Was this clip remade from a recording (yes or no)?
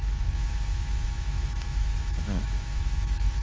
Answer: yes